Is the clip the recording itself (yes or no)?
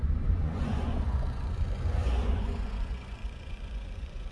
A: no